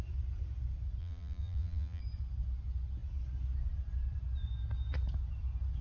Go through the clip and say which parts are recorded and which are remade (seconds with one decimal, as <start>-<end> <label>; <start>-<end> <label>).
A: 0.0-1.0 recorded; 1.0-2.0 remade; 2.0-5.8 recorded